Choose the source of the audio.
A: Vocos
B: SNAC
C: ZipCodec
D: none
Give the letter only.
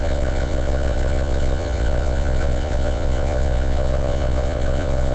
A